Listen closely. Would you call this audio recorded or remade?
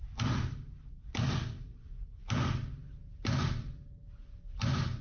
recorded